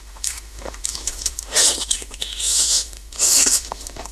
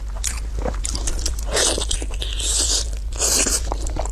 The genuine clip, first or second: second